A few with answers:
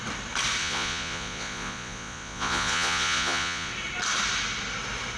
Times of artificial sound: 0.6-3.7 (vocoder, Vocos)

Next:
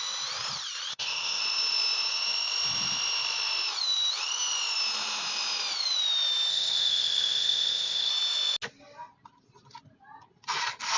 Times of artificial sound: 0.9-1.4 (codec, ZipCodec); 6.5-8.1

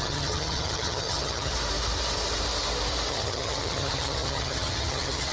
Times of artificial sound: 0.0-1.5 (vocoder, HiFi-GAN); 3.1-5.3

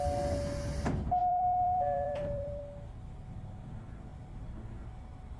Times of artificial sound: 1.2-2.6 (vocoder, BigVGAN v2)

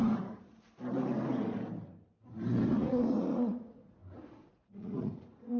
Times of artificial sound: 2.7-5.6 (vocoder, Vocos)